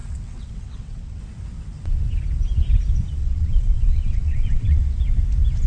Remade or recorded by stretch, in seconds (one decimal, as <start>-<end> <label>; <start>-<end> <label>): 0.0-1.2 remade; 1.2-3.2 recorded; 3.2-5.0 remade; 5.0-5.7 recorded